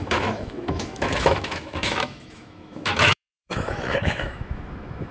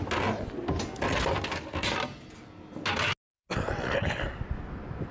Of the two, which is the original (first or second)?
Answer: second